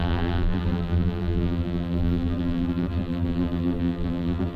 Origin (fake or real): fake